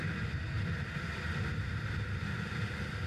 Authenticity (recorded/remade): remade